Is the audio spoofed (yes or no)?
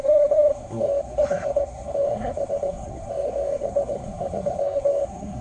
yes